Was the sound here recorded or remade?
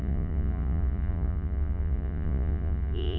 remade